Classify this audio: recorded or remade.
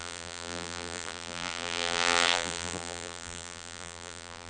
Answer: remade